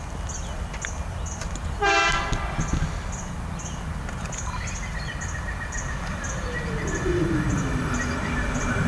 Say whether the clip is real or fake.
real